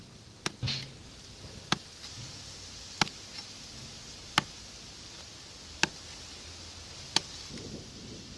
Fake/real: real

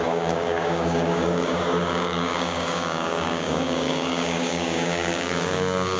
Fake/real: fake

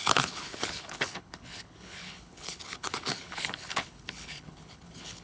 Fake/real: fake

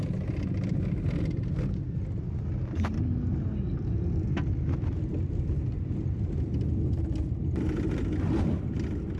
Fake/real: real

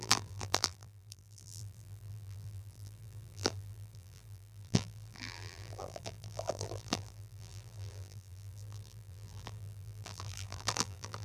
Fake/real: fake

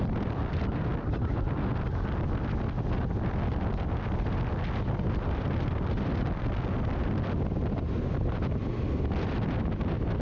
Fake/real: real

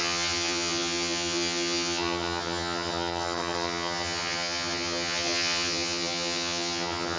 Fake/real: fake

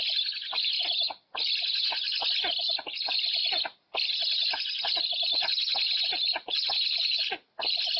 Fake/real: real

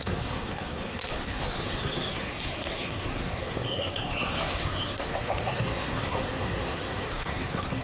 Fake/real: fake